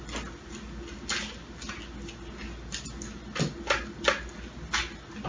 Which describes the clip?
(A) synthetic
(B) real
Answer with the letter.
B